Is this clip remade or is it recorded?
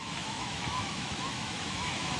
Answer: remade